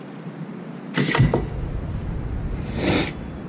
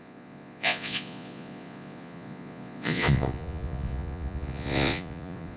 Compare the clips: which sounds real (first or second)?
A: first